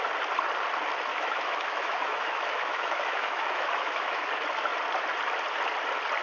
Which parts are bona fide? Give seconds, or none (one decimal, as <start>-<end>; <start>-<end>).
0.0-1.1; 4.3-6.2